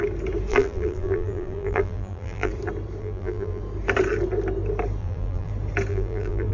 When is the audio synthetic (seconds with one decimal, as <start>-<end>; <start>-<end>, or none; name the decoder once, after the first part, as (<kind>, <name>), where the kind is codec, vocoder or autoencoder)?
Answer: 0.5-2.5 (vocoder, BigVGAN v2); 3.0-3.6; 5.0-5.5; 5.9-6.5